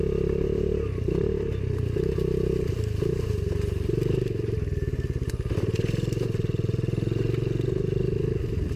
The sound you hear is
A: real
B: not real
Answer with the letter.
A